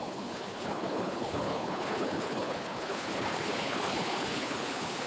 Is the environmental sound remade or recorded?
remade